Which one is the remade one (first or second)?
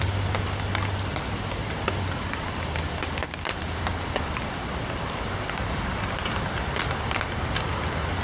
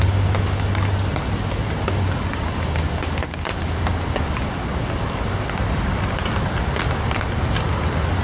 first